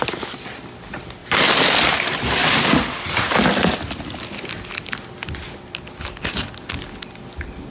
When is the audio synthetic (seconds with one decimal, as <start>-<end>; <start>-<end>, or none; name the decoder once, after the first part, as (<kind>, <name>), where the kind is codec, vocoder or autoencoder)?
none

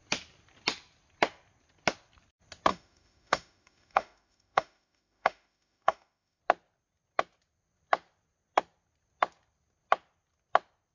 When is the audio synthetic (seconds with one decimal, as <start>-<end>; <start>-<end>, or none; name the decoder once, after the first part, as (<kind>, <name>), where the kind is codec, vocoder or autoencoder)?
2.7-6.4 (autoencoder, DAC-VAE)

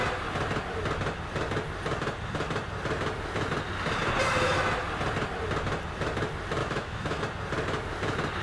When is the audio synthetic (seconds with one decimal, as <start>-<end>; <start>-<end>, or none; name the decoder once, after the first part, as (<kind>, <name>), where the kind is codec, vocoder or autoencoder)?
6.6-7.2 (autoencoder, DAC-VAE)

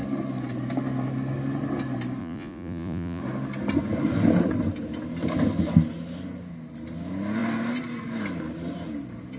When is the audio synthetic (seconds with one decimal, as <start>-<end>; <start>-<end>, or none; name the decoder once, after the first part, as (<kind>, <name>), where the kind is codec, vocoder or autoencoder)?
2.2-3.2 (vocoder, Vocos)

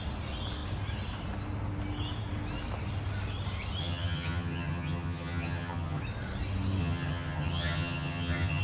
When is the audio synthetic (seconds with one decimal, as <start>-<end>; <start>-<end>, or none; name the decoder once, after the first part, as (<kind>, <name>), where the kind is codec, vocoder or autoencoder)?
3.8-6.0 (vocoder, HiFi-GAN); 6.8-8.6